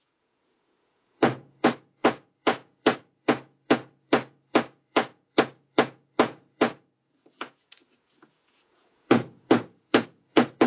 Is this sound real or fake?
fake